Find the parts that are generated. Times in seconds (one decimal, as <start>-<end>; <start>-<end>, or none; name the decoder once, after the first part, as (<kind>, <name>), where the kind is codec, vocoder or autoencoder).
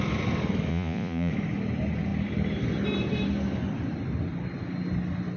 0.7-1.3 (vocoder, Vocos)